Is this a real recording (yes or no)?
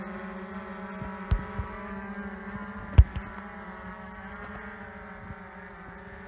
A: yes